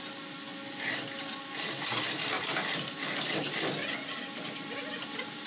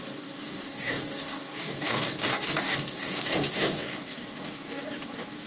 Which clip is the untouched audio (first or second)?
first